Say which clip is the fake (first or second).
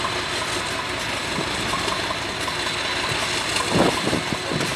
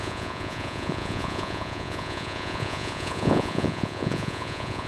second